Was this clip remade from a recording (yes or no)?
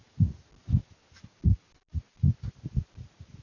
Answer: no